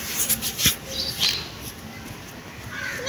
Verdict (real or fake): real